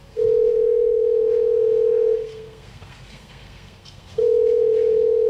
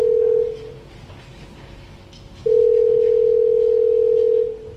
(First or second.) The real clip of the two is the second